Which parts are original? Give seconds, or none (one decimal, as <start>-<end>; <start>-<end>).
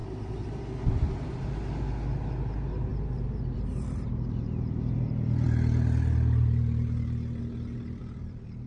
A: 0.6-2.9; 7.4-8.0